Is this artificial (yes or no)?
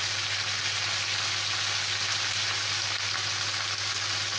no